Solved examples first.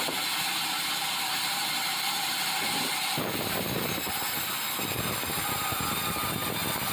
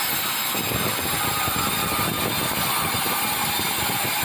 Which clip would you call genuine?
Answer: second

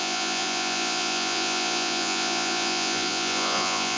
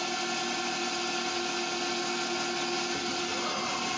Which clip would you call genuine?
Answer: second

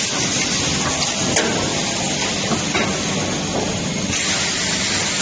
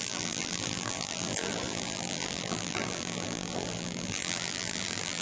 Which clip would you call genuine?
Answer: first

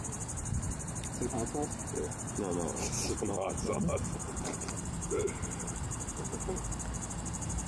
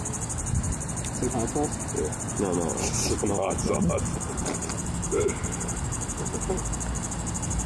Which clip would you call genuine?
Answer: second